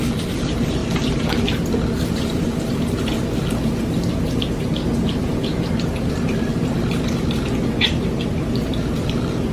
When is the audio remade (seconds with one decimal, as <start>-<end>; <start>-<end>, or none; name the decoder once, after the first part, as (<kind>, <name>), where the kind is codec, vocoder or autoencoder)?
6.5-8.0 (vocoder, BigVGAN v2)